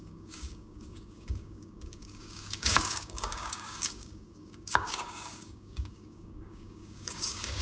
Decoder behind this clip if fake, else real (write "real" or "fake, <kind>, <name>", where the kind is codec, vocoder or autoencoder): fake, codec, DAC